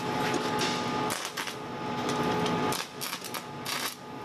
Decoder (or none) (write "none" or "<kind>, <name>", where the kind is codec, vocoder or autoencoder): none